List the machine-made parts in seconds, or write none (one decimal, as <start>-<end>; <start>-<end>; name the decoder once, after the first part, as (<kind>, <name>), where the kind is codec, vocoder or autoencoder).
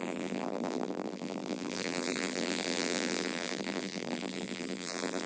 0.0-5.3 (vocoder, BigVGAN v2)